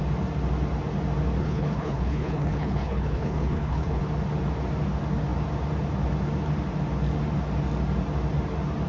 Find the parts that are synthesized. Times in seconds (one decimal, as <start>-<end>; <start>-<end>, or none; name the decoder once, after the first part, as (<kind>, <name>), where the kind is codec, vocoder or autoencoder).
1.4-4.0 (codec, HILCodec)